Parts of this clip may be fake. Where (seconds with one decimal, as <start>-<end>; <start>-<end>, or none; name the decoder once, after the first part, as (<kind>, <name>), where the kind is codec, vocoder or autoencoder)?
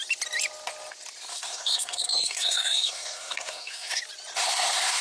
1.3-4.0 (codec, SNAC); 4.4-5.0